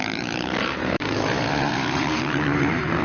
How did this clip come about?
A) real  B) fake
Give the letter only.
B